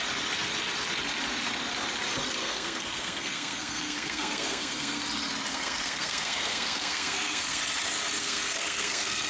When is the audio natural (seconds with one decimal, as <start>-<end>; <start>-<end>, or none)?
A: 0.0-2.4; 5.0-5.5; 7.6-8.2